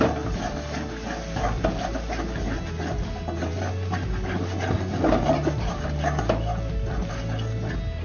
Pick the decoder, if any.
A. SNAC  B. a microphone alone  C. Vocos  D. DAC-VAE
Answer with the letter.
B